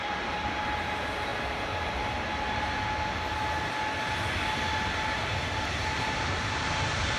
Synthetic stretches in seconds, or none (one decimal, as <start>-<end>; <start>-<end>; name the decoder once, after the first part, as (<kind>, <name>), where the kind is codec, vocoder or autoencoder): 0.0-1.3 (vocoder, BigVGAN v2); 5.6-7.2